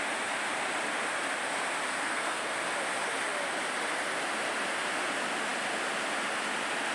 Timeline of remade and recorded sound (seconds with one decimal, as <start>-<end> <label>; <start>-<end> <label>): 0.0-1.9 recorded; 1.9-2.6 remade; 2.6-6.9 recorded

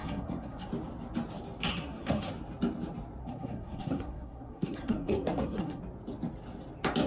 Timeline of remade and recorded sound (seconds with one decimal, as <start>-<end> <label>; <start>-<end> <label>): 0.0-0.7 remade; 0.7-1.7 recorded; 1.7-2.3 remade; 2.3-3.2 recorded; 3.2-5.8 remade; 5.8-7.1 recorded

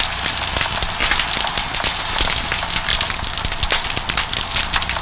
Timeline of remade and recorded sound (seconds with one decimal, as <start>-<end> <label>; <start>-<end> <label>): 0.0-5.0 recorded